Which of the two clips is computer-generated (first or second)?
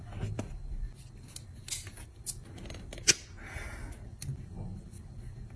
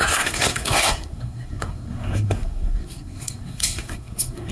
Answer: second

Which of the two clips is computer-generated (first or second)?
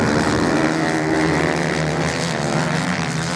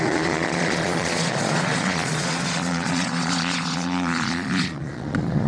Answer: second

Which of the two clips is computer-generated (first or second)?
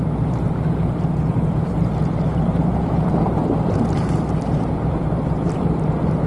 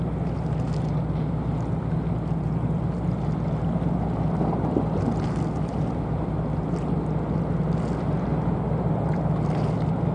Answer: first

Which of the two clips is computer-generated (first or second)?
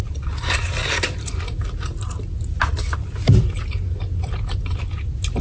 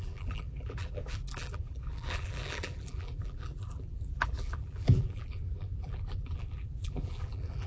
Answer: second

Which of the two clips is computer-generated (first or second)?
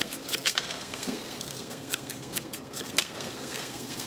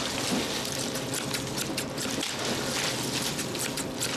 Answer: first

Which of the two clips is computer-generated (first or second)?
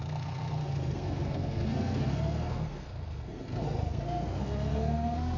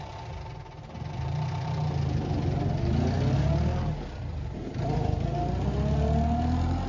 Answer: first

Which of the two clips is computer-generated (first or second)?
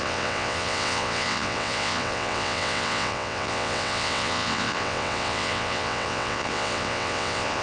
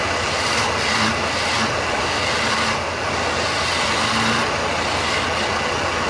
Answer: first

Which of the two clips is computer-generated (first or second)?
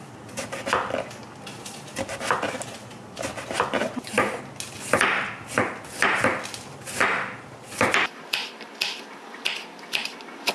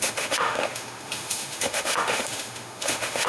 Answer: second